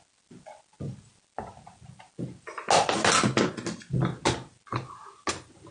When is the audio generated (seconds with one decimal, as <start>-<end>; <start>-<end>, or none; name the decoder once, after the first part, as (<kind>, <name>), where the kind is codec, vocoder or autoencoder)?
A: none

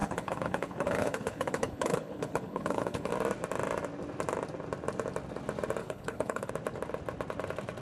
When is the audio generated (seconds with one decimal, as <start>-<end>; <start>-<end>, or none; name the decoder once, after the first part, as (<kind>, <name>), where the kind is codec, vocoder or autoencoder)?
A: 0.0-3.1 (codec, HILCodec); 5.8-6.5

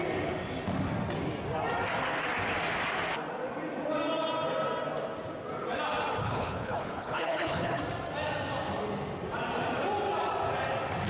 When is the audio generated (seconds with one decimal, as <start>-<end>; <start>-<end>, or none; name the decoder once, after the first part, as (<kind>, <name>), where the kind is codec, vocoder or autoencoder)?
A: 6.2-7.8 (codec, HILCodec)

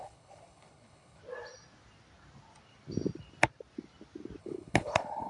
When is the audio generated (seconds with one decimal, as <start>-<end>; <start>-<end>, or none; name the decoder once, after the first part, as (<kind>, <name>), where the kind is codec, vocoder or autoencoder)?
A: 0.0-1.2 (codec, HILCodec); 4.4-5.3

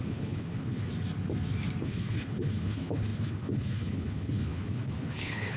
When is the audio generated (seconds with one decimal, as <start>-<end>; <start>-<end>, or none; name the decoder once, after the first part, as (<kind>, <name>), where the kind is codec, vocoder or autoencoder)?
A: 0.0-0.9 (codec, HILCodec); 1.8-5.6